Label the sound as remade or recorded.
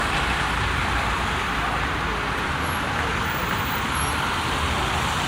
recorded